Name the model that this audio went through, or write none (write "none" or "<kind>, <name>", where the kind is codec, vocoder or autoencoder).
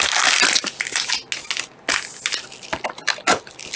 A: none